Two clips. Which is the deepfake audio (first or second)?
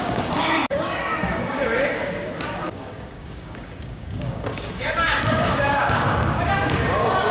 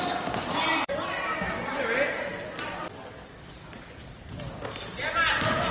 first